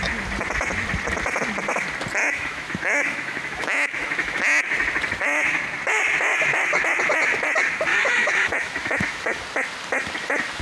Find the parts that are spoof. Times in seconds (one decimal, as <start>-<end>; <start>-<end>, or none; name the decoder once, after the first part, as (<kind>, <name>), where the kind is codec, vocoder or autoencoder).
2.2-4.4 (autoencoder, DAC-VAE); 7.9-9.4